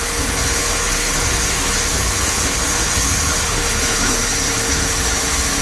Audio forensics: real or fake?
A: fake